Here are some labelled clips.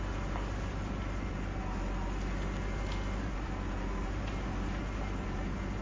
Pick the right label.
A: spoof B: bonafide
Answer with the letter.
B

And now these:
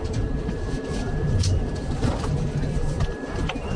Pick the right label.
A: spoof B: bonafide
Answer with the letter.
A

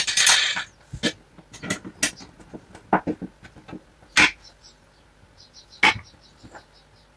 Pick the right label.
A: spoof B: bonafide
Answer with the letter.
B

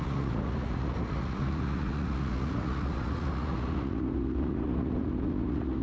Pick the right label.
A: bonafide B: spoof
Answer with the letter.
B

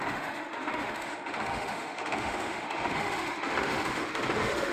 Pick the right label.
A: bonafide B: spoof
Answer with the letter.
B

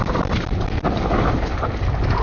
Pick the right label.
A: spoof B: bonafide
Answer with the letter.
B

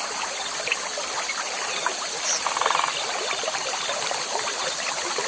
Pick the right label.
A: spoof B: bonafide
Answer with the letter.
B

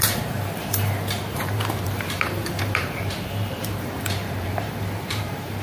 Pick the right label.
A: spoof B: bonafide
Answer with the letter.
A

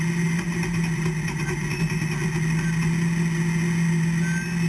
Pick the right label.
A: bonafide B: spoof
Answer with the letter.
A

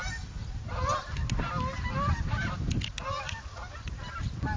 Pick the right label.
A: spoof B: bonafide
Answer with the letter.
B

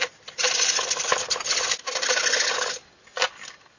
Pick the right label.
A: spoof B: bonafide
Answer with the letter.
B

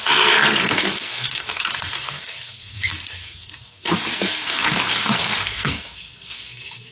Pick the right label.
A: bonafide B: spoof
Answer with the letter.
B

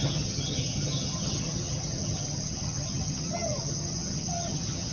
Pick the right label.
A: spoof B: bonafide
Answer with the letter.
A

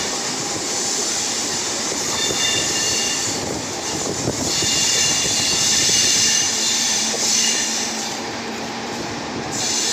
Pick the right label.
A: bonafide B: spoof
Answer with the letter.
B